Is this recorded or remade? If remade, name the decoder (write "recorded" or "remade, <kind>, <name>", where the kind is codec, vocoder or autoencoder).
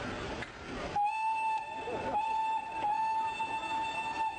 recorded